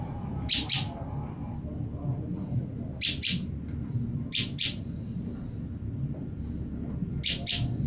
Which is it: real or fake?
real